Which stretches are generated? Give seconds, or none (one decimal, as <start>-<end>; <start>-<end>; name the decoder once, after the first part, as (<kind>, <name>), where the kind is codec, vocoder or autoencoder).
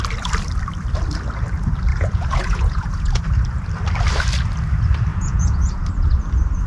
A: 1.9-3.2 (vocoder, Vocos); 5.1-5.8